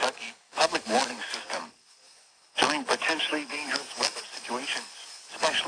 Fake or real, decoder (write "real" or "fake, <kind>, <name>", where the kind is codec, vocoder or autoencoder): fake, codec, DAC